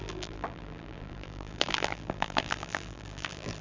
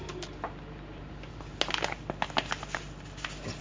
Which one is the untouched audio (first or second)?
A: second